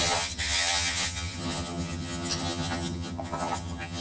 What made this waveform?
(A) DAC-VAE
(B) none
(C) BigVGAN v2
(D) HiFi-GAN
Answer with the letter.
D